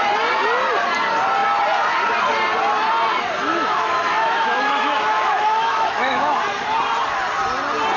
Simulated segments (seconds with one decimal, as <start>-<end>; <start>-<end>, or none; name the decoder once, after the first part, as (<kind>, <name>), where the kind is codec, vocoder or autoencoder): 3.5-6.4 (autoencoder, DAC-VAE)